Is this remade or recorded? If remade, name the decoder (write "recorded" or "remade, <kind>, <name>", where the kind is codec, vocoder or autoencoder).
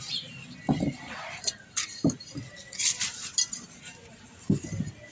recorded